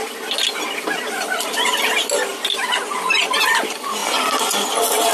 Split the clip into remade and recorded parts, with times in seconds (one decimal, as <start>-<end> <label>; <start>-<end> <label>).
0.0-5.1 recorded